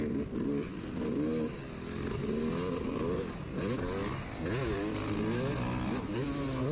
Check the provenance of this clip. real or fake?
real